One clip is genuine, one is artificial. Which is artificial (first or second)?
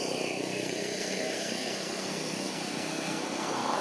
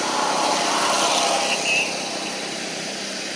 first